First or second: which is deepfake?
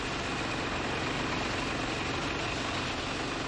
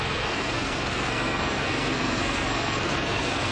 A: second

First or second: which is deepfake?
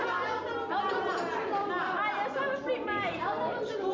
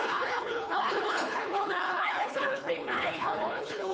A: second